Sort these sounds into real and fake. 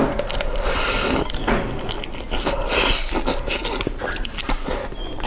real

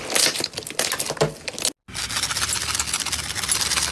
real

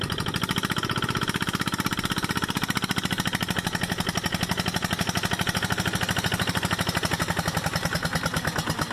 real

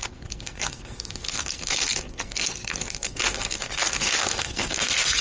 fake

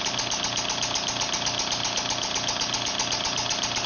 real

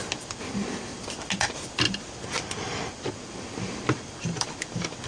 real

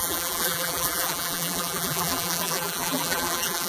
fake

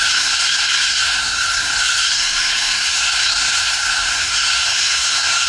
fake